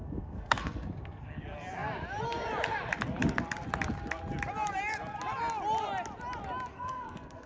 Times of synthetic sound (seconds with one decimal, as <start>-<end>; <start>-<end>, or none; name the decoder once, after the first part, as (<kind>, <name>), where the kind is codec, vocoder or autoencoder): 0.0-1.4 (codec, SNAC); 6.7-7.5